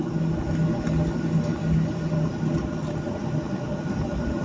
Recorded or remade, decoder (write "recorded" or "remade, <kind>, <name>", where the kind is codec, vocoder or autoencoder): recorded